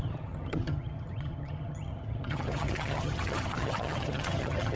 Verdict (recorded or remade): remade